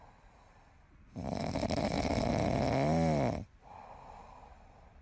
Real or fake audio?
real